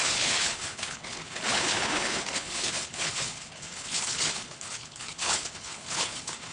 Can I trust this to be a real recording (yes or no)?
no